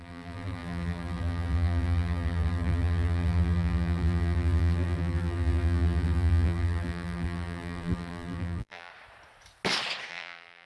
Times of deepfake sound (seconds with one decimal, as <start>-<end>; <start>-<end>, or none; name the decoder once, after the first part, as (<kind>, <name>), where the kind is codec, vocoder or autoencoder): 0.0-8.9 (vocoder, BigVGAN v2); 10.1-10.7